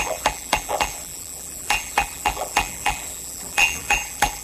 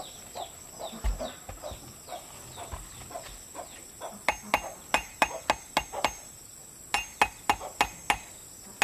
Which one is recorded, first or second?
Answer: second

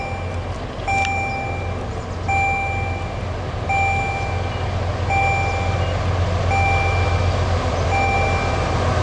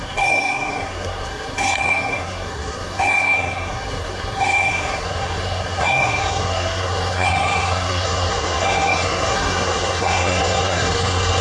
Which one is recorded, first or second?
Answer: first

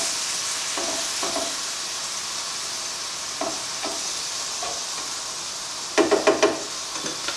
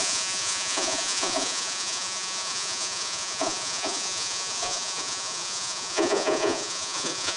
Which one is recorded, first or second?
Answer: first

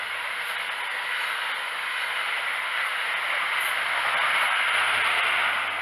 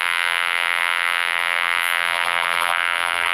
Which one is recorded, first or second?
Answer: first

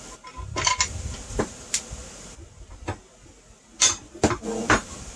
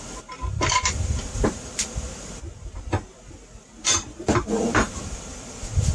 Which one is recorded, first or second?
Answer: first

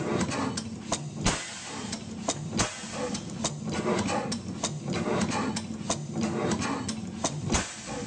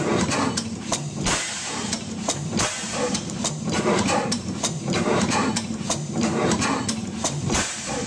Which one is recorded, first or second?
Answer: first